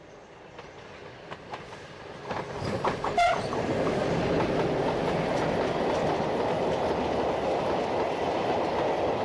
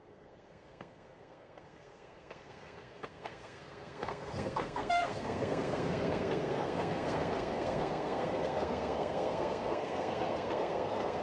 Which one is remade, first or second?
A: second